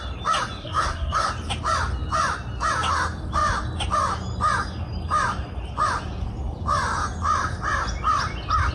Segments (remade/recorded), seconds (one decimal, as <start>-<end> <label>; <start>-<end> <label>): 0.0-0.6 recorded; 0.6-1.3 remade; 1.3-8.7 recorded